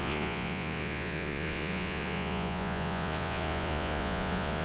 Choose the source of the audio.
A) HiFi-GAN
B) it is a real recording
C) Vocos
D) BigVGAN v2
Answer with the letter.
C